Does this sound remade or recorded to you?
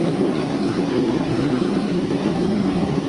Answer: remade